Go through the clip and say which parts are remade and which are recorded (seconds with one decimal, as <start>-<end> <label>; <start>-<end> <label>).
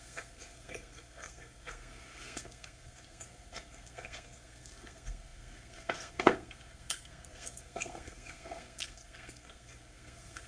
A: 0.0-10.5 remade